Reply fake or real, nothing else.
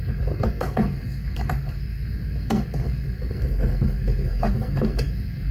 fake